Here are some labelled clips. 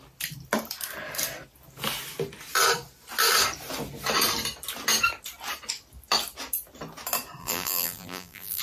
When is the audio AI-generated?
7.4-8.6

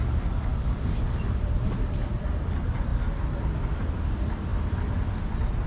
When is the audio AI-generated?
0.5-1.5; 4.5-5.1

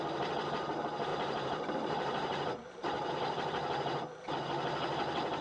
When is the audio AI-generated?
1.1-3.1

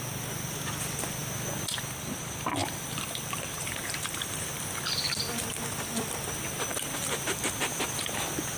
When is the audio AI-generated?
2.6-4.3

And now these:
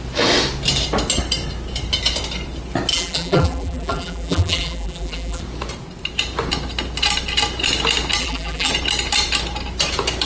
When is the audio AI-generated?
2.9-5.4; 8.2-8.7

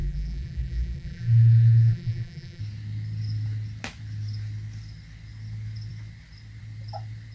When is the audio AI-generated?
0.0-2.6